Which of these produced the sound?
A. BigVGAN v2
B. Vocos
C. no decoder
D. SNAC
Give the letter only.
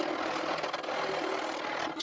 C